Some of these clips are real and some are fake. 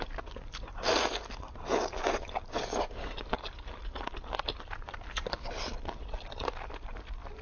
real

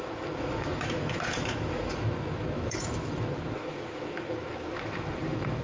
fake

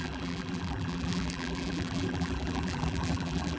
fake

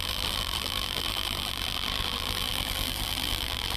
fake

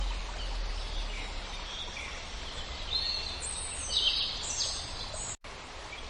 real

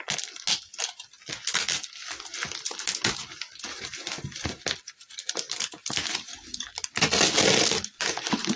real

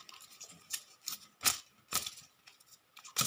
real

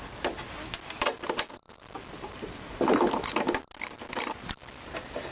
real